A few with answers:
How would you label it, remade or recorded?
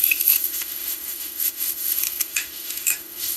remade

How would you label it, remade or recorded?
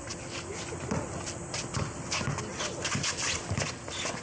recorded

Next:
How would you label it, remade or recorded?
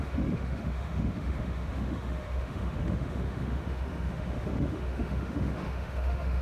remade